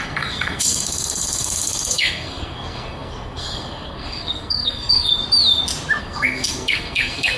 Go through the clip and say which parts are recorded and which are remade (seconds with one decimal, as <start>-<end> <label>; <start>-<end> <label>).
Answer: 0.0-5.1 remade; 5.1-6.0 recorded; 6.0-7.4 remade